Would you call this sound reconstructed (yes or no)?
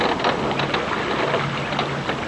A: no